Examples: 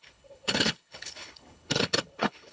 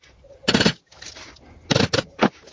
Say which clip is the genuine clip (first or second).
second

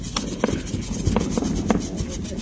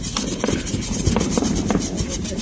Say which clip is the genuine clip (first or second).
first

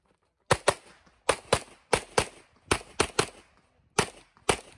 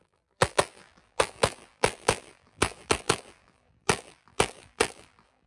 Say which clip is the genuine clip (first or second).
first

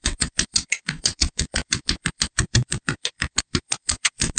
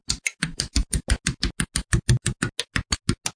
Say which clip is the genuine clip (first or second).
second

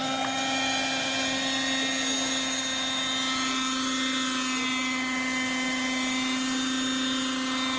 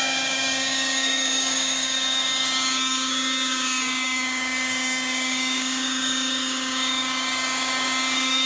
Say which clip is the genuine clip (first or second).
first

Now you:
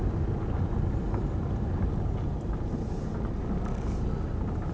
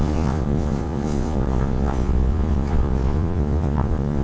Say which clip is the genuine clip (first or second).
first